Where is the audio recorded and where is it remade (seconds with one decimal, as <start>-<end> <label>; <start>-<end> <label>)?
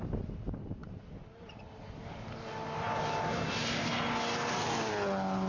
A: 0.0-5.5 recorded